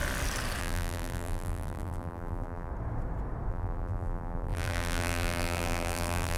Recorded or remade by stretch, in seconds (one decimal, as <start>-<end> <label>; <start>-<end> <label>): 0.0-0.6 recorded; 0.6-2.7 remade; 2.7-3.5 recorded; 3.5-6.4 remade